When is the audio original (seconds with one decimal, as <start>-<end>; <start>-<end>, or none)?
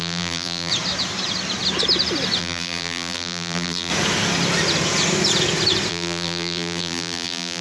0.7-2.4; 3.9-5.9